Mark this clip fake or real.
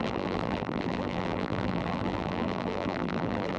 fake